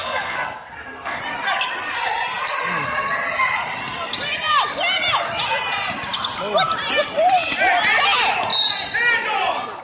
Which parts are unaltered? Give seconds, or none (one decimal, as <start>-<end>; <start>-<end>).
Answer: 1.2-9.8